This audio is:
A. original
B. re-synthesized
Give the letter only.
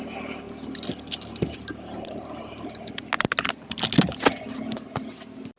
A